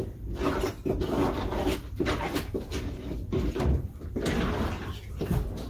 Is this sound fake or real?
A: real